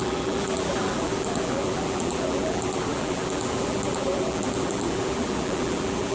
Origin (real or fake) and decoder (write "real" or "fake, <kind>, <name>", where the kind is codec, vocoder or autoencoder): fake, vocoder, BigVGAN v2